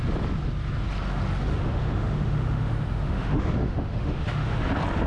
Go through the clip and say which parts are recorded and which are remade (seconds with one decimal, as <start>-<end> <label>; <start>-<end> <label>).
0.0-1.5 recorded; 1.5-4.6 remade; 4.6-5.1 recorded

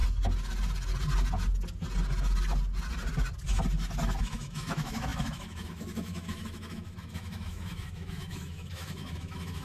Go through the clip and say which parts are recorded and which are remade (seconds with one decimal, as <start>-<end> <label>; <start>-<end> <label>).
0.0-4.2 recorded; 4.2-9.6 remade